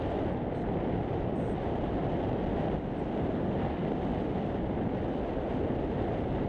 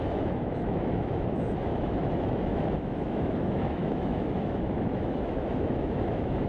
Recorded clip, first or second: first